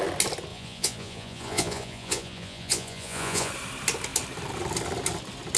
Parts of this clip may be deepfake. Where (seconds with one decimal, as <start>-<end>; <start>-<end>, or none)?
0.5-3.5